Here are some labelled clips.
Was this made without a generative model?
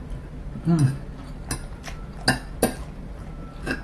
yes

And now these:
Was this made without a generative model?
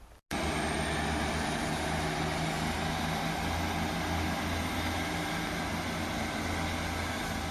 yes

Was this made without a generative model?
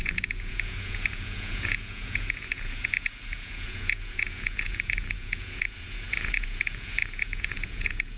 no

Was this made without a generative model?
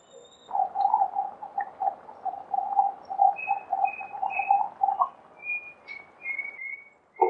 yes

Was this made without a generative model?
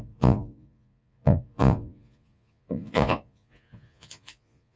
no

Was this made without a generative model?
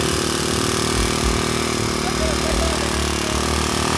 yes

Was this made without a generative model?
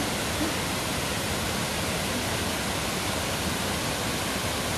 yes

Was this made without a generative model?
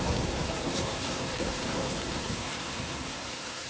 no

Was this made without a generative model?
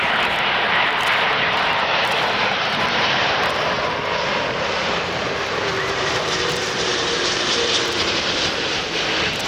no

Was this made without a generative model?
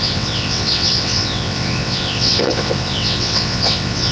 no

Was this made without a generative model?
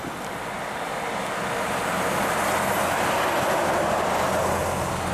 yes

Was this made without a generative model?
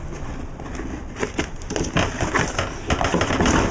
yes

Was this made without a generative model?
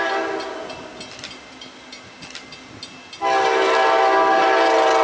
yes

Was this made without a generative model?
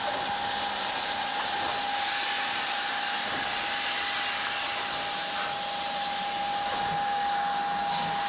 yes